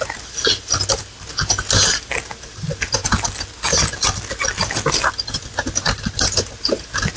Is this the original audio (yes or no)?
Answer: yes